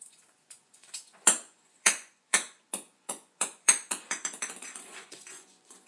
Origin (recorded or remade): remade